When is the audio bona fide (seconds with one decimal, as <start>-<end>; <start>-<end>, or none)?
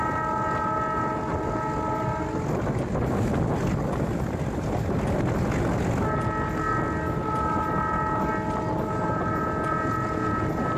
0.0-10.8